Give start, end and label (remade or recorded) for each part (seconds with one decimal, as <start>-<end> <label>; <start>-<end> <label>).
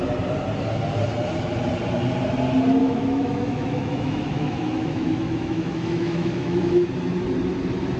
0.0-2.8 recorded; 2.8-6.9 remade; 6.9-8.0 recorded